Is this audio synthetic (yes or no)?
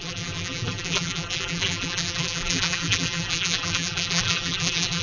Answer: yes